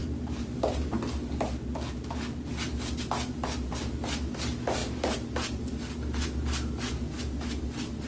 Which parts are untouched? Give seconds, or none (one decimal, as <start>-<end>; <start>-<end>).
0.9-8.1